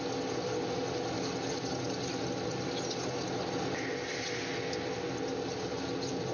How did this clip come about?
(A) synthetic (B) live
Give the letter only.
B